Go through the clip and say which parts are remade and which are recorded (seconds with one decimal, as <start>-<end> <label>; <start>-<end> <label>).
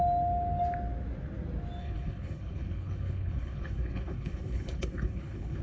0.0-1.8 recorded; 1.8-5.6 remade